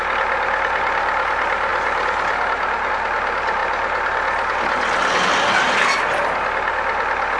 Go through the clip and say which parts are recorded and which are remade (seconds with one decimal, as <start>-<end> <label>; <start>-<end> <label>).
0.0-7.4 recorded